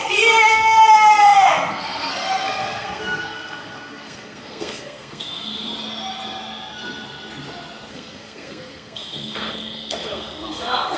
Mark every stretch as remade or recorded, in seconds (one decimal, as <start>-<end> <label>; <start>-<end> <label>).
0.0-5.7 remade; 5.7-7.9 recorded; 7.9-11.0 remade